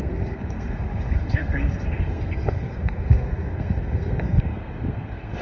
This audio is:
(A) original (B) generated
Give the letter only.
B